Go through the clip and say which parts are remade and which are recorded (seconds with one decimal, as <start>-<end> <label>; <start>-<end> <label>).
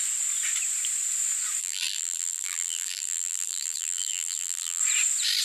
0.0-1.6 recorded; 1.6-4.8 remade; 4.8-5.4 recorded